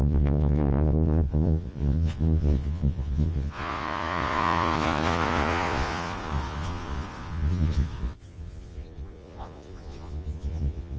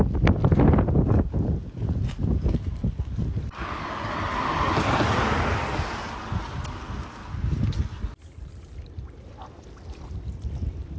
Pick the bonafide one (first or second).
second